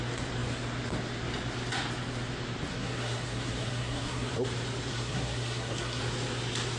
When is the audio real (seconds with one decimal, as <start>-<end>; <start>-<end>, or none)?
0.0-2.7; 4.3-4.9; 6.0-6.8